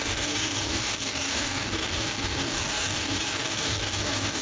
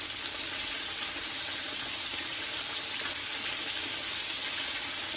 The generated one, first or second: first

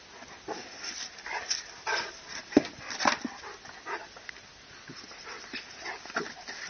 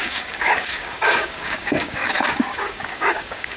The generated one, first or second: second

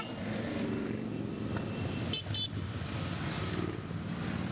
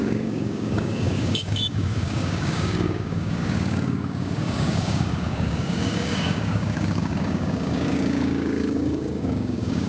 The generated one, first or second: second